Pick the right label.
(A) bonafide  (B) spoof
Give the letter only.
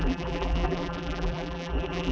B